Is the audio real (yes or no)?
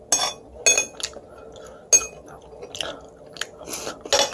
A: yes